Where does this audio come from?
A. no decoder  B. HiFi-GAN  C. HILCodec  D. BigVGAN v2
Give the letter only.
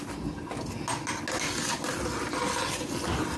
A